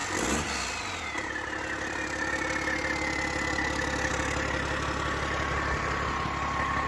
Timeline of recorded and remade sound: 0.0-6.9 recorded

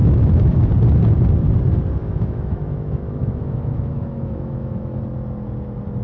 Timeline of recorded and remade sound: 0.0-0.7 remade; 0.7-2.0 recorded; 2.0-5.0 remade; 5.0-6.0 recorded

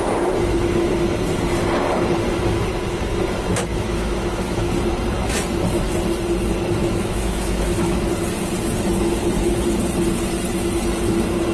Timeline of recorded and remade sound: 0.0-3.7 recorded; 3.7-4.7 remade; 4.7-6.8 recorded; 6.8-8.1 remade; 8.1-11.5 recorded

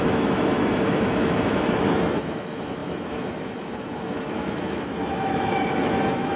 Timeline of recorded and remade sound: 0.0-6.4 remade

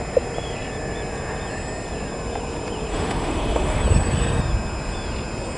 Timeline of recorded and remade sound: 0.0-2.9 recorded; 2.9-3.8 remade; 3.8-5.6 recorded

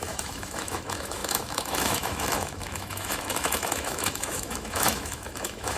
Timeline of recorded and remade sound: 0.0-5.8 remade

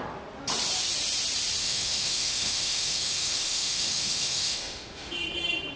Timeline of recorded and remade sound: 0.0-1.6 recorded; 1.6-5.1 remade; 5.1-5.8 recorded